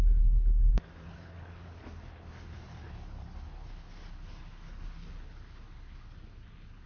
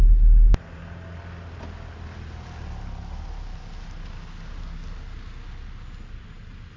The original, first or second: second